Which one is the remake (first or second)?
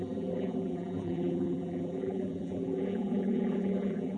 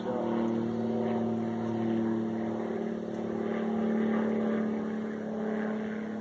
first